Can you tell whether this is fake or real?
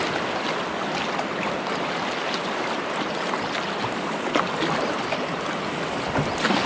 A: real